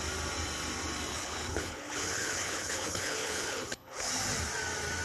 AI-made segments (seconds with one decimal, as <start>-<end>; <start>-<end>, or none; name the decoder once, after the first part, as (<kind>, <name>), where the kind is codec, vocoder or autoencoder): 1.1-4.1 (codec, HILCodec)